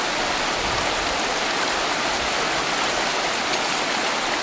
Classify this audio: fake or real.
real